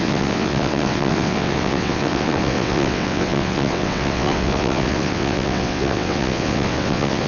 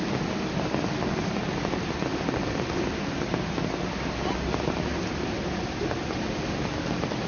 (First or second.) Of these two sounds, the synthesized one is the first